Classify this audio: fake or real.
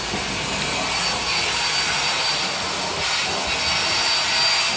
real